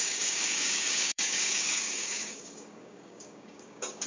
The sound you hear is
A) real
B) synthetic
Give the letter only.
B